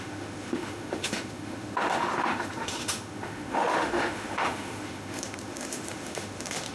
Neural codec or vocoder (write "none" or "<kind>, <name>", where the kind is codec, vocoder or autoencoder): autoencoder, DAC-VAE